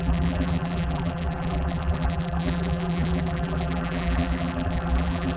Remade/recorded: remade